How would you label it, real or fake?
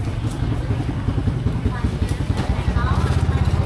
real